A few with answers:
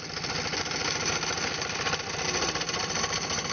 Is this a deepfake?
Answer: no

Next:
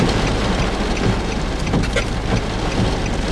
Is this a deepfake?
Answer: no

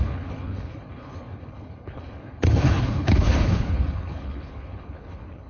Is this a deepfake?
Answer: yes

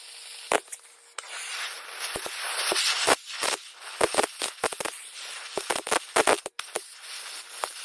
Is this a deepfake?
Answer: no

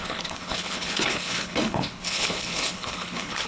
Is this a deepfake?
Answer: yes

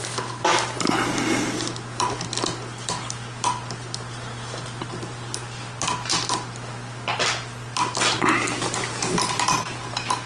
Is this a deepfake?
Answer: no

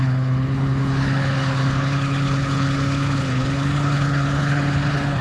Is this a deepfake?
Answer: yes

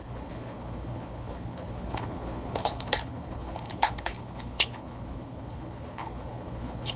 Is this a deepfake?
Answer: yes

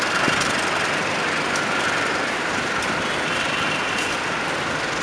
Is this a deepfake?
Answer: no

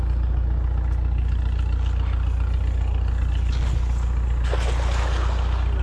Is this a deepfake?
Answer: no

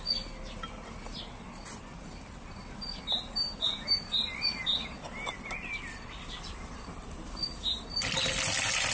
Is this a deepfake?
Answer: no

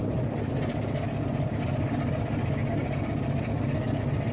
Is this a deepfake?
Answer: no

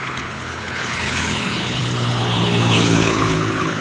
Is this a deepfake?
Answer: yes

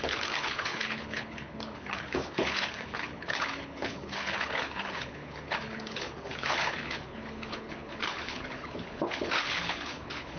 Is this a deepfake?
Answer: yes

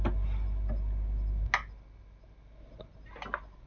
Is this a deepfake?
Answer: no